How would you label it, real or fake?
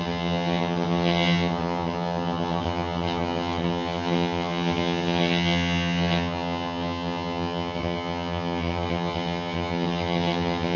fake